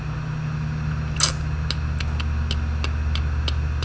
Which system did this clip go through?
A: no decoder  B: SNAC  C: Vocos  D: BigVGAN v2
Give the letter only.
A